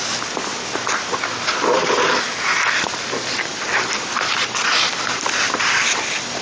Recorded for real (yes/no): no